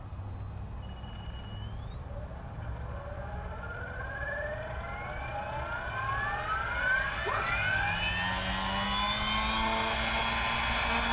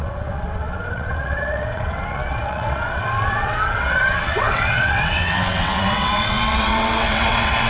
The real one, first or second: first